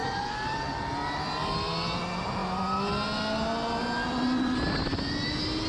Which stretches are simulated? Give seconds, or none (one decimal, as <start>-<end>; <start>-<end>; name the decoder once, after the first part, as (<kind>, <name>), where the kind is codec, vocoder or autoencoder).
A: 0.0-0.6 (vocoder, BigVGAN v2)